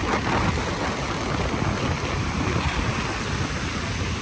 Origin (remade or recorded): recorded